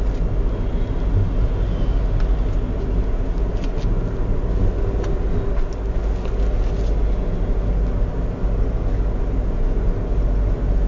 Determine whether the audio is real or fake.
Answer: real